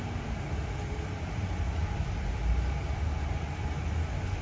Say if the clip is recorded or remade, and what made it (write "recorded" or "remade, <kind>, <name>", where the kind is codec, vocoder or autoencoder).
recorded